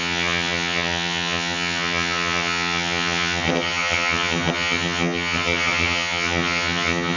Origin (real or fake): fake